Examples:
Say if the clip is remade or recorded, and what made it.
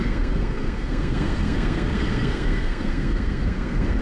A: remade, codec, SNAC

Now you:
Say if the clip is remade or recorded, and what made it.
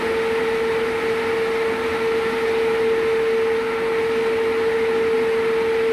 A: recorded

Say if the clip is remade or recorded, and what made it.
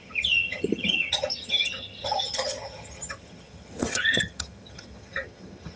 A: remade, vocoder, HiFi-GAN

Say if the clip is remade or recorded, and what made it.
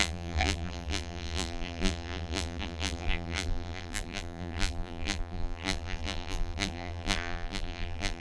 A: remade, vocoder, BigVGAN v2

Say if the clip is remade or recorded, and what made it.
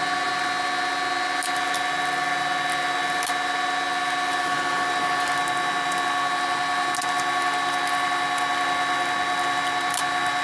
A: recorded